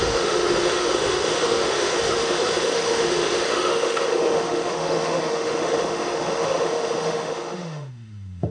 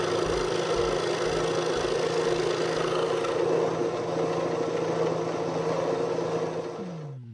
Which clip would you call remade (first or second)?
first